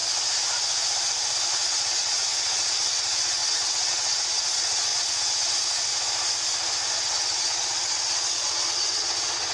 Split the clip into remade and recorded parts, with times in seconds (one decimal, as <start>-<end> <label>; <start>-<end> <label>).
0.0-1.5 recorded; 1.5-5.9 remade; 5.9-7.0 recorded; 7.0-9.5 remade